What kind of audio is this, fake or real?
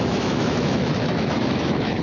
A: fake